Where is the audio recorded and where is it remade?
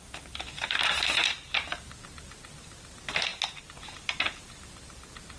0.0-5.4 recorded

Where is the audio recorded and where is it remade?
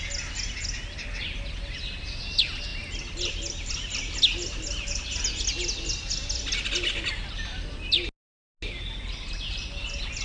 0.0-10.2 recorded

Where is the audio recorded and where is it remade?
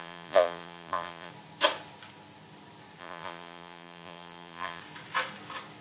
0.0-1.3 remade; 1.3-3.0 recorded; 3.0-4.8 remade; 4.8-5.8 recorded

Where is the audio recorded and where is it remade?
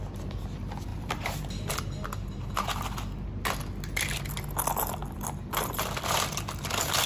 0.0-0.9 recorded; 0.9-1.7 remade; 1.7-5.0 recorded; 5.0-6.3 remade; 6.3-7.1 recorded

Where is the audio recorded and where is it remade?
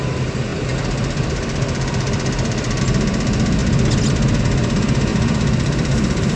0.0-0.5 recorded; 0.5-2.8 remade; 2.8-5.1 recorded; 5.1-6.4 remade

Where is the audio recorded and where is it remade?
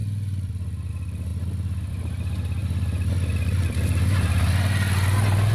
0.0-0.9 remade; 0.9-1.3 recorded; 1.3-1.9 remade; 1.9-2.6 recorded; 2.6-3.1 remade; 3.1-5.5 recorded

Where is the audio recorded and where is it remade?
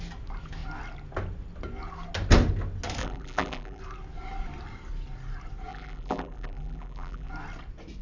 0.0-3.0 recorded; 3.0-3.8 remade; 3.8-5.7 recorded; 5.7-7.3 remade; 7.3-8.0 recorded